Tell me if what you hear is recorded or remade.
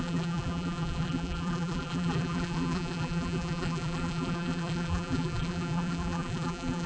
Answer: remade